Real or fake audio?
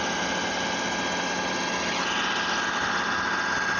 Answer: real